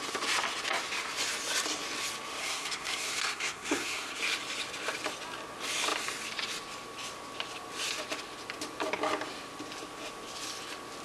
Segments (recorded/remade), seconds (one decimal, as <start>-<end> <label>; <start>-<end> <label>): 0.0-2.4 recorded; 2.4-4.2 remade; 4.2-11.0 recorded